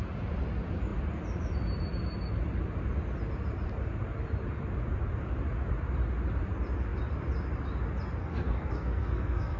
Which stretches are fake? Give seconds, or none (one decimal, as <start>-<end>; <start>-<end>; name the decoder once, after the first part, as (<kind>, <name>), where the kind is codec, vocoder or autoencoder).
8.2-9.6 (codec, SNAC)